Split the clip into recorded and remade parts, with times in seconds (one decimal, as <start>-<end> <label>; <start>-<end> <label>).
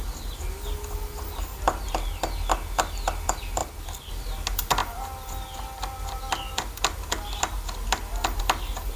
0.0-9.0 recorded